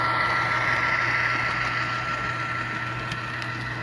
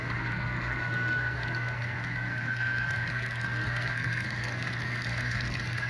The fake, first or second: second